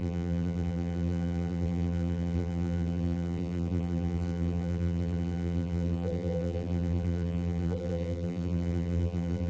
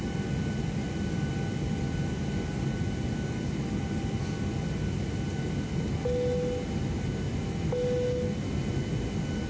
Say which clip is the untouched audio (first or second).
second